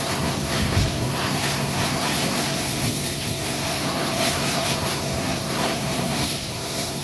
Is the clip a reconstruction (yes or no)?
yes